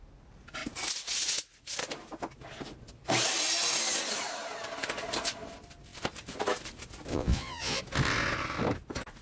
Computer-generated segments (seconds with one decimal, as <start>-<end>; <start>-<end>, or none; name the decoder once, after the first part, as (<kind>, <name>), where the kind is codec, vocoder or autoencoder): 7.1-7.8 (vocoder, Vocos)